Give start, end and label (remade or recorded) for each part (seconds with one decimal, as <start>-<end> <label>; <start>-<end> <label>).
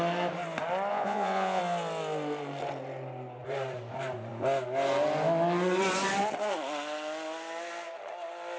0.0-0.9 recorded; 0.9-1.6 remade; 1.6-8.6 recorded